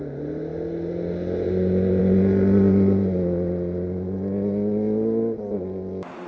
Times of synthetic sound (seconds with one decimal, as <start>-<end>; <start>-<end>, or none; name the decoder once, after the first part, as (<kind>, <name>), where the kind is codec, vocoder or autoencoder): none